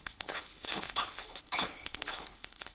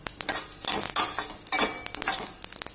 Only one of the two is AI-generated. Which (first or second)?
first